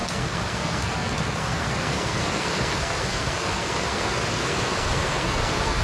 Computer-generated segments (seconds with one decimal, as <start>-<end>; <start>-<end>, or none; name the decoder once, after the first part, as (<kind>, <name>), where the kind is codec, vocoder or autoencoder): 0.0-5.8 (codec, SNAC)